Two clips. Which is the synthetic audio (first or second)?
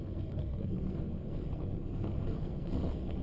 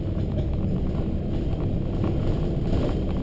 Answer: first